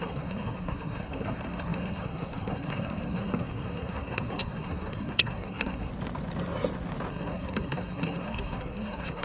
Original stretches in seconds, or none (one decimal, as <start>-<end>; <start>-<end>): 5.9-7.1